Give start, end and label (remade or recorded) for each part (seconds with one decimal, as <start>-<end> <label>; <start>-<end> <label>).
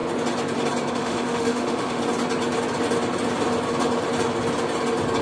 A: 0.0-0.9 recorded; 0.9-2.0 remade; 2.0-5.2 recorded